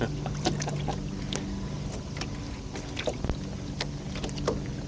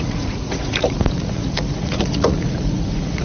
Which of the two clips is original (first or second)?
first